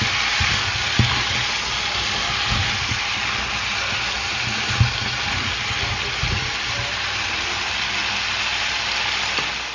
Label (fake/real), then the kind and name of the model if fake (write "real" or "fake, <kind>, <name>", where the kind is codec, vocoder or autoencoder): real